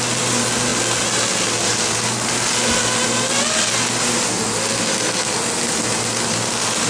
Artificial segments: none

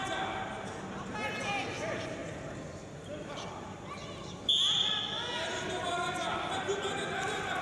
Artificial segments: none

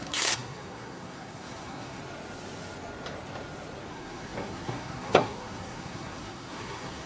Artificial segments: 0.0-2.0 (codec, SNAC); 3.9-7.1

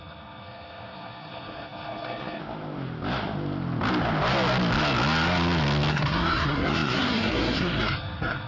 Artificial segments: 0.0-2.4 (codec, SNAC); 5.9-8.5

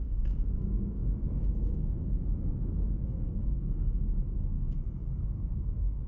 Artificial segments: 0.0-6.1 (codec, SNAC)

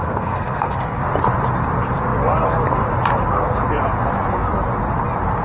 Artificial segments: 0.0-1.0 (codec, SNAC)